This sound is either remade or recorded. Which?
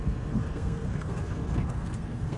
remade